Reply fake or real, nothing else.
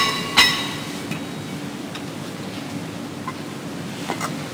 real